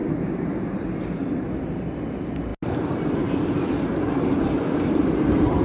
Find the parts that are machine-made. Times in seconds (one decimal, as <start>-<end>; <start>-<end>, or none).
none